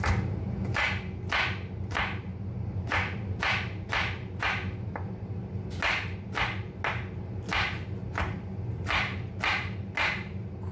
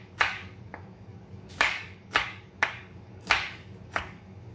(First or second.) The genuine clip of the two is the first